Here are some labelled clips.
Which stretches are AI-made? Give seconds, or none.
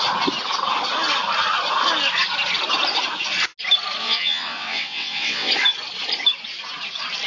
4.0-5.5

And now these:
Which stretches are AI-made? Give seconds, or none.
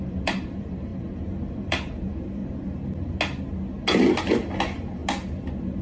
0.0-2.4; 4.6-5.0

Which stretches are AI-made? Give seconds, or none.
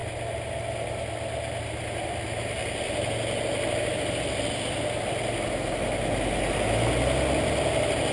none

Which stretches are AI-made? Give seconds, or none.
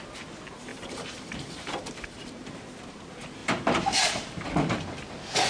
0.7-2.6; 3.4-4.5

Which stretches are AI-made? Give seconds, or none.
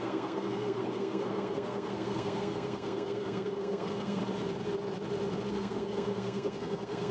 0.0-4.2; 5.5-7.1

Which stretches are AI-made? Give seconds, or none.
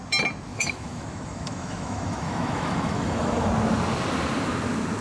0.5-3.5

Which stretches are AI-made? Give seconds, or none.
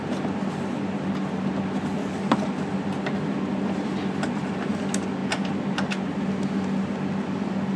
none